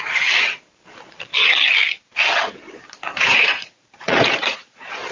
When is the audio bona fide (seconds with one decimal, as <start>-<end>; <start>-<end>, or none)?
0.0-3.1

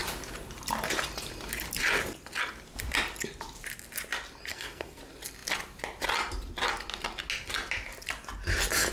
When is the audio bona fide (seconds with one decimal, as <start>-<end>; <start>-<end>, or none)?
0.0-4.5; 5.0-8.9

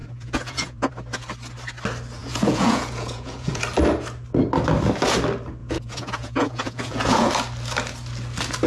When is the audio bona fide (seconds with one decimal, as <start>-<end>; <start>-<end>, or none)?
0.9-2.2; 3.6-5.6; 7.3-8.7

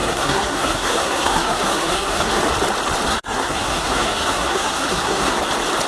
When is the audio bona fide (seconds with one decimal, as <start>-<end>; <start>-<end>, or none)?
2.4-3.1; 5.4-5.9

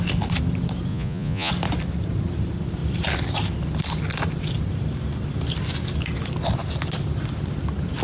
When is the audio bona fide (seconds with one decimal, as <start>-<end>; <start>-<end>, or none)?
0.0-0.9; 1.5-8.0